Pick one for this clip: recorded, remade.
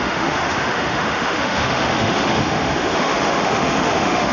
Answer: remade